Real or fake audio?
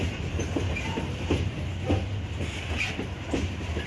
real